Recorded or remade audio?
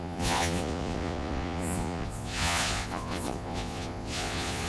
remade